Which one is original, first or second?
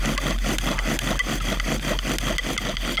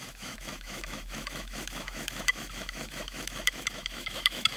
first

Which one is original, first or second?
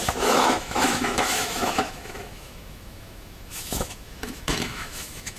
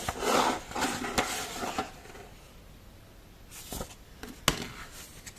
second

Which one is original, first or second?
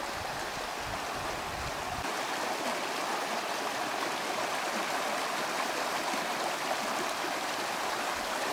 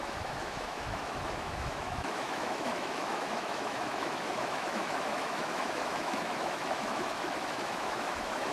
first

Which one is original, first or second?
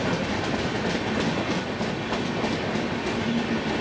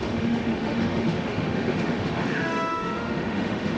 first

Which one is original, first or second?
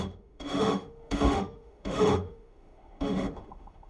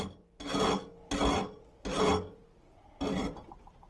second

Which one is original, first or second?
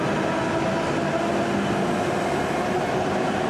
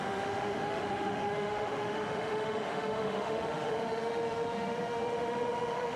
first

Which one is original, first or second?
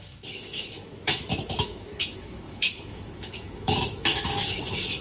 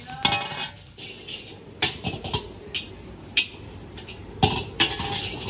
second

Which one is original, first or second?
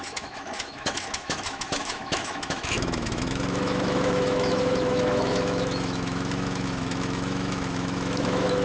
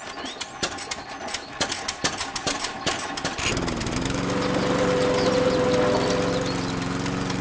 second